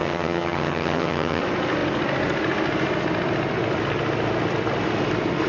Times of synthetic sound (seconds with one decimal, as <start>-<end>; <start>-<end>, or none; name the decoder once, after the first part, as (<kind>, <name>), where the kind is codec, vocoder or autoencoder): 0.0-1.4 (vocoder, HiFi-GAN)